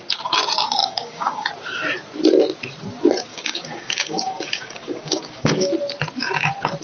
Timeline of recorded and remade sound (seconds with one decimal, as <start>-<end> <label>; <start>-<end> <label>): 0.0-0.8 recorded; 0.8-1.5 remade; 1.5-3.3 recorded; 3.3-5.7 remade; 5.7-6.8 recorded